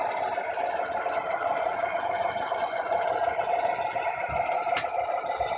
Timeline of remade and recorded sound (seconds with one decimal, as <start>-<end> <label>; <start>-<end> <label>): 0.0-1.4 recorded; 1.4-3.1 remade; 3.1-5.6 recorded